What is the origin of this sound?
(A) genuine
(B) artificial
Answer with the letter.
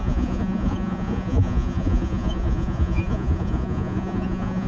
B